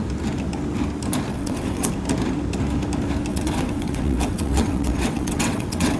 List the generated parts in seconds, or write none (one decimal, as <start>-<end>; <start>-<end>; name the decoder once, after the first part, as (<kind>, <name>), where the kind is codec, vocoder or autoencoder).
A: 1.3-1.9 (vocoder, WaveNeXt); 3.3-6.0